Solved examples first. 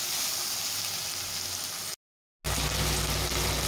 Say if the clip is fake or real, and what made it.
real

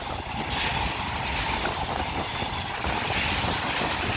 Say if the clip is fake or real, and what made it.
real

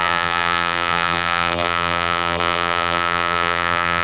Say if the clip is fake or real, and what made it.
fake, vocoder, BigVGAN v2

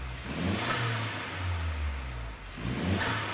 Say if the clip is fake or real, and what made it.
real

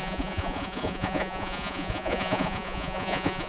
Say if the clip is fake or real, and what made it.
fake, vocoder, Vocos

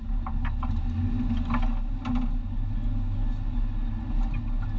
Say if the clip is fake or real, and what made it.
real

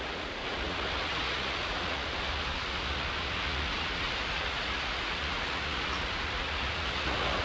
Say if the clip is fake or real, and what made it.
fake, vocoder, Vocos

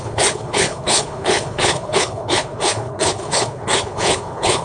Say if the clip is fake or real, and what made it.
fake, codec, HILCodec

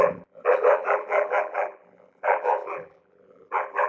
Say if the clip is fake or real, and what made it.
fake, vocoder, BigVGAN v2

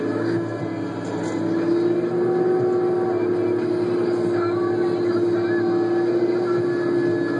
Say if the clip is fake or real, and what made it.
real